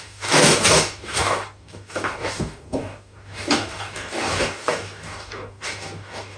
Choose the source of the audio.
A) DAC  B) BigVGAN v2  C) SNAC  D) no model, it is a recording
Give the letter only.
A